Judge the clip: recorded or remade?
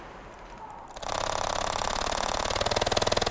recorded